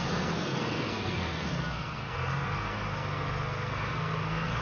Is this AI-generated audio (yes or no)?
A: yes